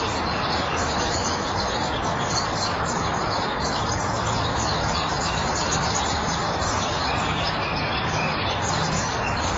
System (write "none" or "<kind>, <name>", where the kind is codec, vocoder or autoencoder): codec, DAC